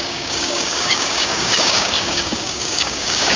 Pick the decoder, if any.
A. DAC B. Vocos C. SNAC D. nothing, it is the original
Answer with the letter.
A